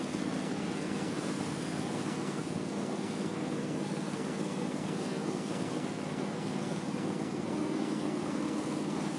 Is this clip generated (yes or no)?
yes